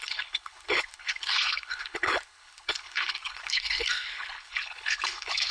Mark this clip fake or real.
fake